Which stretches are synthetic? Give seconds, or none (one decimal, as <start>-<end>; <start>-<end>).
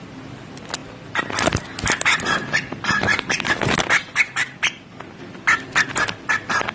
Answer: none